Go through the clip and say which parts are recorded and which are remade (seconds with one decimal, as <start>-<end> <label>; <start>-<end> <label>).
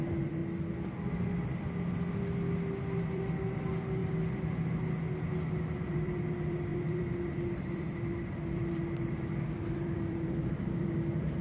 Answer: 0.0-0.4 remade; 0.4-3.0 recorded; 3.0-4.0 remade; 4.0-5.7 recorded; 5.7-11.4 remade